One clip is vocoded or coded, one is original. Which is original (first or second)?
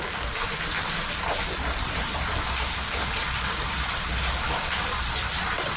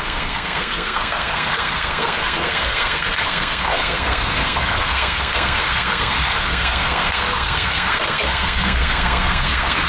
first